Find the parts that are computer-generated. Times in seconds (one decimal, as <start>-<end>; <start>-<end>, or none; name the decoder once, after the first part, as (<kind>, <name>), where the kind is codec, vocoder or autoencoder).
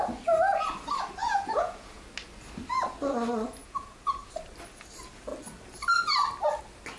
1.2-2.0 (vocoder, Vocos); 3.6-4.3